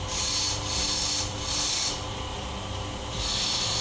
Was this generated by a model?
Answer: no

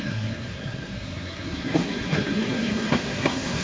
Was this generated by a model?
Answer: yes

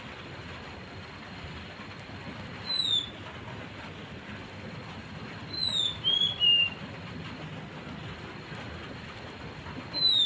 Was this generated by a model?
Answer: no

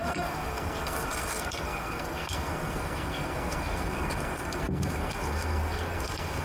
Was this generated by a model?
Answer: yes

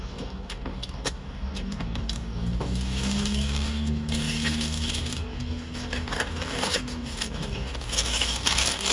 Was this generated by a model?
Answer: yes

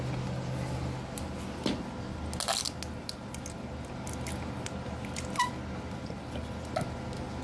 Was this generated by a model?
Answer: no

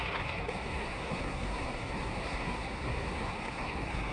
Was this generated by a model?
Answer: yes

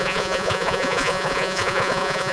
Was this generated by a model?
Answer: yes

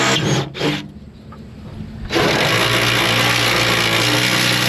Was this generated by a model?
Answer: no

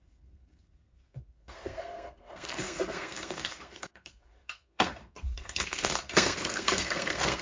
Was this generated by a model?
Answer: yes